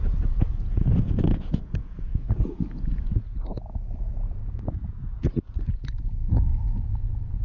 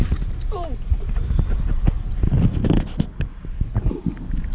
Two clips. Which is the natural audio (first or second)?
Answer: second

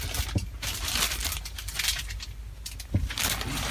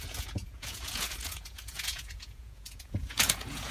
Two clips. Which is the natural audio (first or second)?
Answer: first